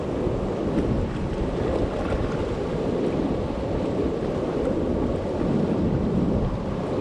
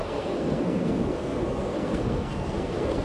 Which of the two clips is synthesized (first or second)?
second